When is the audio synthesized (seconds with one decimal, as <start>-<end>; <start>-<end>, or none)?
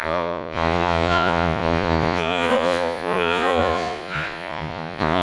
0.0-5.2